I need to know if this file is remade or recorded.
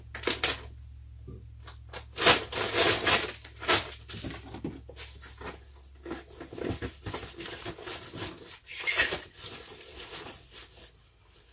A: recorded